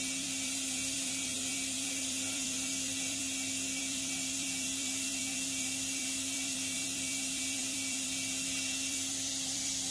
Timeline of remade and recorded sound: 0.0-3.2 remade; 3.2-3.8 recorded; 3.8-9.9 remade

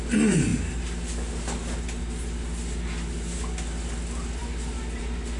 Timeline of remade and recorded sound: 0.0-5.4 recorded

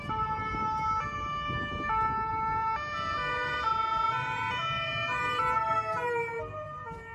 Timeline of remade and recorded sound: 0.0-0.6 remade; 0.6-2.3 recorded; 2.3-7.1 remade

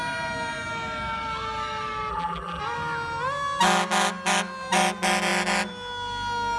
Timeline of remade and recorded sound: 0.0-2.1 recorded; 2.1-2.6 remade; 2.6-6.6 recorded

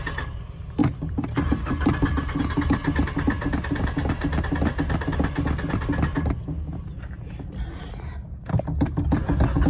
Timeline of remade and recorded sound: 0.0-0.8 recorded; 0.8-2.4 remade; 2.4-9.7 recorded

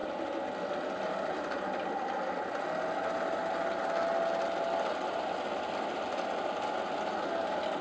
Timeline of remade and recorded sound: 0.0-2.6 remade; 2.6-7.8 recorded

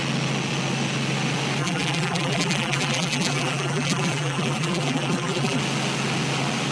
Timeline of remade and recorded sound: 0.0-1.6 recorded; 1.6-5.6 remade; 5.6-6.7 recorded

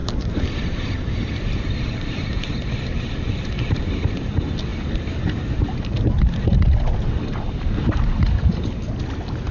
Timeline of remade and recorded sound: 0.0-2.6 remade; 2.6-9.5 recorded